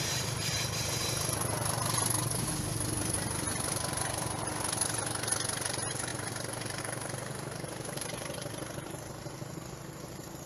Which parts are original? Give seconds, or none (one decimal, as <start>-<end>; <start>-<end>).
0.5-3.7; 4.5-5.6